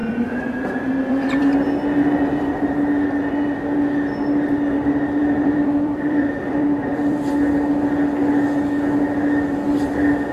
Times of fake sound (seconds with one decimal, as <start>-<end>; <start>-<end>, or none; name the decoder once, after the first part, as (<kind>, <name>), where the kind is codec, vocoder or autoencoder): 0.0-1.4 (vocoder, BigVGAN v2); 5.2-7.3

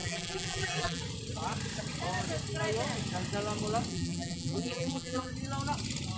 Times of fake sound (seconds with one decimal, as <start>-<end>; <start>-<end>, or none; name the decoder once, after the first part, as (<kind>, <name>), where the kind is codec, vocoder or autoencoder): 0.0-1.0 (vocoder, BigVGAN v2); 3.9-5.3

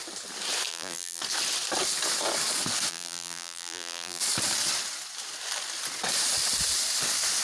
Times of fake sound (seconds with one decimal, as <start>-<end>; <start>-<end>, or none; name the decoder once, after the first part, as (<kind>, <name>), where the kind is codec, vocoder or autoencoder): 0.7-1.2 (vocoder, BigVGAN v2); 2.9-4.2

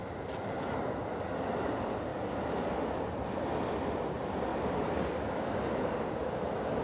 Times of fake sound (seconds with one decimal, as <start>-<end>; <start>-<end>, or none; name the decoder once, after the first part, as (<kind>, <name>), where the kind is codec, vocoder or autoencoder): 0.0-4.5 (vocoder, BigVGAN v2); 5.3-6.8

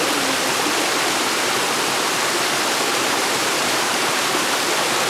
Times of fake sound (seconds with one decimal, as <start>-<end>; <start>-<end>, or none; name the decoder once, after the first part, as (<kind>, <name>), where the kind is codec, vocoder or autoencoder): 2.9-3.9 (vocoder, BigVGAN v2)

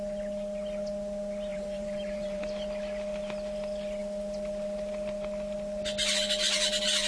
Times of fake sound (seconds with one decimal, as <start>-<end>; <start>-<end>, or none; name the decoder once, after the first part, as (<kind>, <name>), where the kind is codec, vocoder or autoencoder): 1.5-2.4 (vocoder, BigVGAN v2)

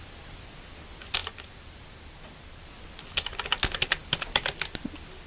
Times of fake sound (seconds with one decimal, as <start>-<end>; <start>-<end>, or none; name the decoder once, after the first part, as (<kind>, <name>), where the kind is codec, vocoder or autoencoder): none